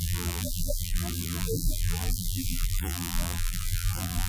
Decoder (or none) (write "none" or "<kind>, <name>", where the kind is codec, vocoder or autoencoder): vocoder, BigVGAN v2